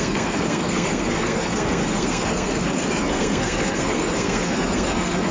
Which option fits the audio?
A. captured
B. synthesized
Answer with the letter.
B